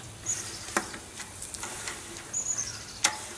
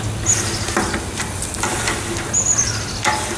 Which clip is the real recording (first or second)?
second